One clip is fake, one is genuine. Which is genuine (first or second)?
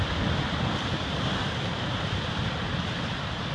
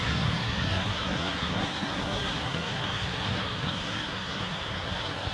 first